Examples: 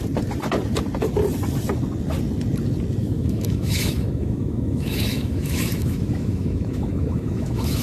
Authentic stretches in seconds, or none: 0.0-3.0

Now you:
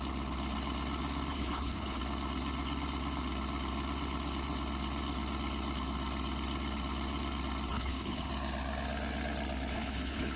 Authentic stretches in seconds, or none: 0.0-1.3; 2.0-7.7; 8.3-9.7

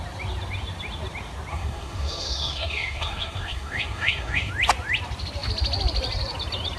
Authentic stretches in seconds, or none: 0.0-1.5; 4.5-6.8

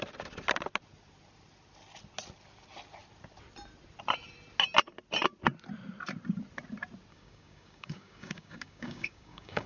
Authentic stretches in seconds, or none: 0.0-7.1

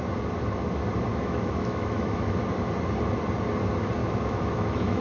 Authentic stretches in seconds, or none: 0.0-1.1; 2.4-4.0

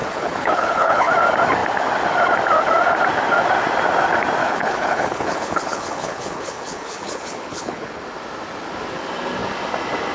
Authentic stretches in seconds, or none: 1.1-4.4; 8.0-10.1

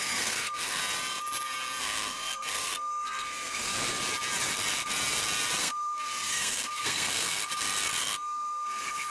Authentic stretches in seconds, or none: 0.8-1.8; 3.7-5.6; 7.5-8.0